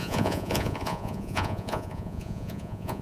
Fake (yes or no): yes